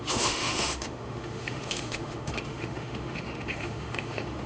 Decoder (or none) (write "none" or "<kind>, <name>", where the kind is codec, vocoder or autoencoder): autoencoder, DAC-VAE